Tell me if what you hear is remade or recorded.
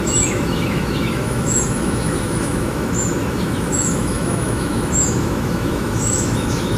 remade